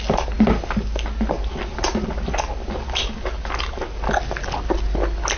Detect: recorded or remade recorded